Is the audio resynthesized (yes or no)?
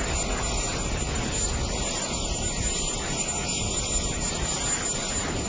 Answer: no